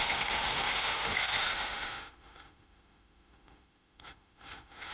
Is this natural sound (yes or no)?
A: no